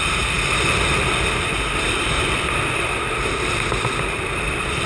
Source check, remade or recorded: recorded